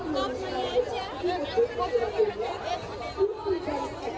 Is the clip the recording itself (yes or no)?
yes